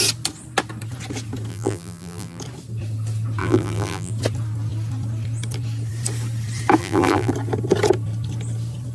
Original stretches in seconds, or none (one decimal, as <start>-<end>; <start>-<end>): 0.0-1.5; 2.4-3.4; 4.1-6.8; 7.3-8.9

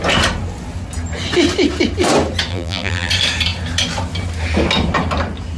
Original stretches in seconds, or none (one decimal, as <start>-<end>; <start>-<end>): 0.0-2.5; 3.1-5.6

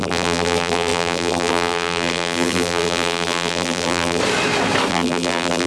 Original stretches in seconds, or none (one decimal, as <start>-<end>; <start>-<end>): 4.2-4.9

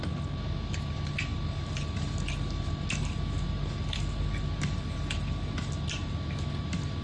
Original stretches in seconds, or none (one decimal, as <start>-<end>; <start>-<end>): 0.0-7.0

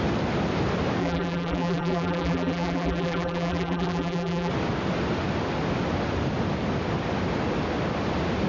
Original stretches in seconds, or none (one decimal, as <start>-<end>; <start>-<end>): 0.0-1.0; 4.5-8.5

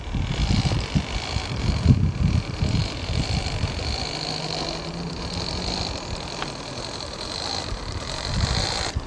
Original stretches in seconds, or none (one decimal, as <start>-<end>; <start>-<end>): 0.0-9.1

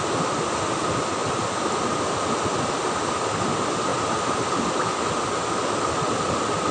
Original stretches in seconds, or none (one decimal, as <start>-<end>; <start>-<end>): 0.0-6.7